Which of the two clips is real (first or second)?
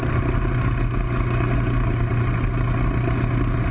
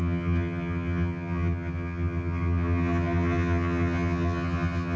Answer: first